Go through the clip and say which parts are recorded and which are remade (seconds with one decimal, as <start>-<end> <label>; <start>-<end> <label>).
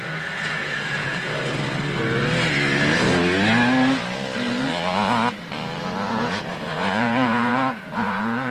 0.0-1.5 remade; 1.5-6.1 recorded; 6.1-8.5 remade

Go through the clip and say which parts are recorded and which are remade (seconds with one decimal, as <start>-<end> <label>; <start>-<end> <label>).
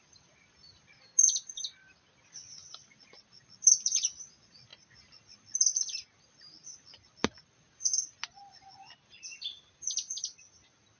0.0-11.0 recorded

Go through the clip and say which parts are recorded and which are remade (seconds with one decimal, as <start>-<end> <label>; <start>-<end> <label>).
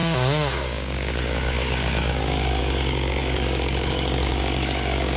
0.0-5.2 remade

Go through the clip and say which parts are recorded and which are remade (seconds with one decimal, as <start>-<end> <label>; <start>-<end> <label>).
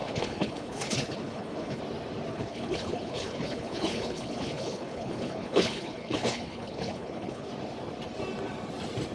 0.0-1.8 remade; 1.8-2.3 recorded; 2.3-7.5 remade; 7.5-9.1 recorded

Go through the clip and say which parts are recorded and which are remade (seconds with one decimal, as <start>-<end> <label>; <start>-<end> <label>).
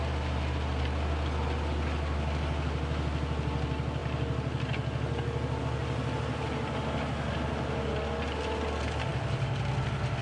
0.0-10.2 recorded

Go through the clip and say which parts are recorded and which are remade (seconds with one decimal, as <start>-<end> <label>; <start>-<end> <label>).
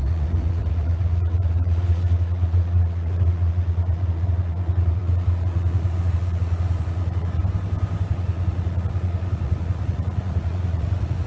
0.0-7.4 remade; 7.4-8.1 recorded; 8.1-11.3 remade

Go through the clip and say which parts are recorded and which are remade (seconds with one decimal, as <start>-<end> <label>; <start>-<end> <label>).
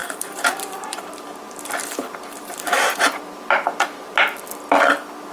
0.0-3.2 remade; 3.2-5.3 recorded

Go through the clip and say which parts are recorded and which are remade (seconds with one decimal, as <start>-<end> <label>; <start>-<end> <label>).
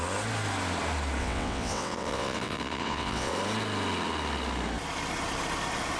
0.0-1.2 recorded; 1.2-3.3 remade; 3.3-6.0 recorded